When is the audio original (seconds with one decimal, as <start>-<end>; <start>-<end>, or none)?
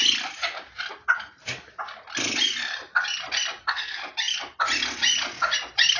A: 0.0-3.6; 4.0-6.0